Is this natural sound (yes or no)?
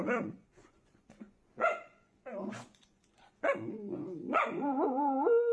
no